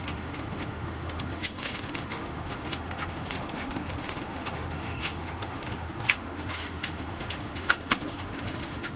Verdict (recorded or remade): remade